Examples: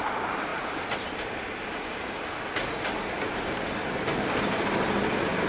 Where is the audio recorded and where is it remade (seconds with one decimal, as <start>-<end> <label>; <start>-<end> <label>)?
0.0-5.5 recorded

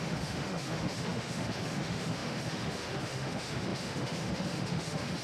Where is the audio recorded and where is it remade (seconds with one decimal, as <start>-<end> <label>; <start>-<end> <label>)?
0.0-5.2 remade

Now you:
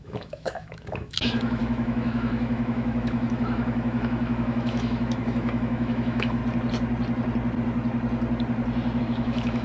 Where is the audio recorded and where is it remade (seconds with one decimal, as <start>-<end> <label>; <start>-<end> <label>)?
0.0-6.4 remade; 6.4-9.0 recorded; 9.0-9.6 remade

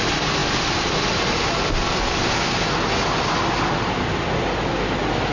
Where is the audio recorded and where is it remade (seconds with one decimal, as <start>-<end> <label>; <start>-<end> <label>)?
0.0-5.3 recorded

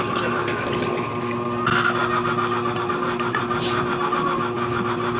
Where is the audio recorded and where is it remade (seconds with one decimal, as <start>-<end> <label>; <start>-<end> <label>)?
0.0-5.2 recorded

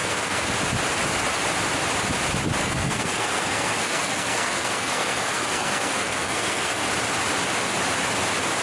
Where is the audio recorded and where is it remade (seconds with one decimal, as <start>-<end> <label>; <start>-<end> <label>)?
0.0-0.5 remade; 0.5-2.6 recorded; 2.6-6.9 remade; 6.9-8.6 recorded

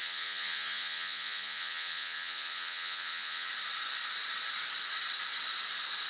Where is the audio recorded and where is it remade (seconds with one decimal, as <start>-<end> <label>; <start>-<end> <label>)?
0.0-3.5 remade; 3.5-6.1 recorded

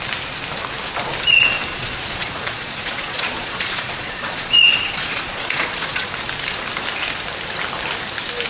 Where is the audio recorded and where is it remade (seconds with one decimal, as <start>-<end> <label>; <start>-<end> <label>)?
0.0-1.7 recorded; 1.7-6.1 remade; 6.1-8.5 recorded